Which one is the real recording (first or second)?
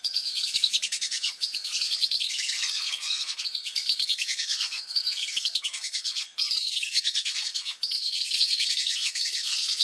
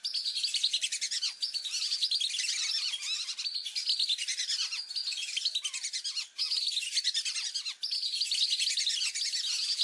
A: second